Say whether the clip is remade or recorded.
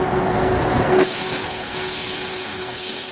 remade